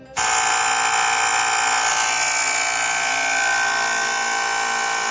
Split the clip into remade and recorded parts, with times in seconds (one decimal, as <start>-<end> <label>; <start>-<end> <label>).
0.0-5.1 recorded